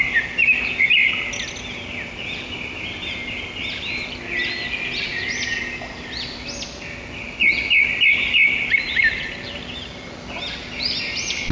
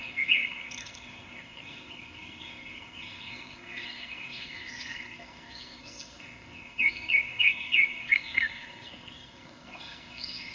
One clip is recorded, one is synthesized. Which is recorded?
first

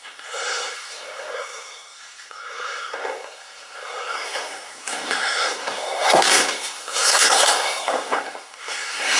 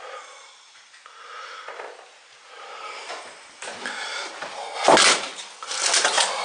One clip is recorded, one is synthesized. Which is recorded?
second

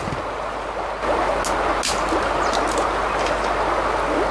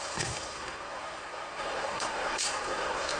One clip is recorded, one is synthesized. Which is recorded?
first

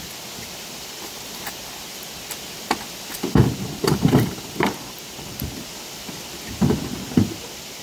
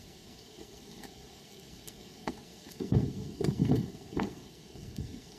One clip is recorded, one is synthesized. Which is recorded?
first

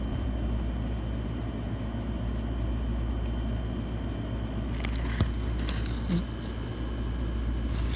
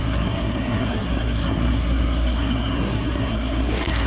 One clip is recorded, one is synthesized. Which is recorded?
first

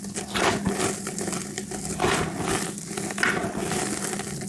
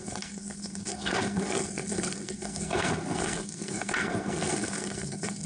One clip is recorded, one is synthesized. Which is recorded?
first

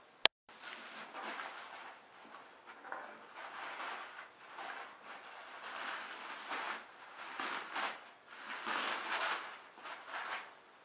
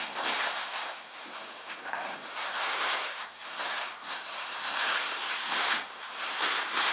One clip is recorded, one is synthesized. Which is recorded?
first